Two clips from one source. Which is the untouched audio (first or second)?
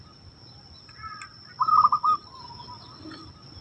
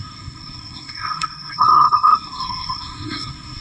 first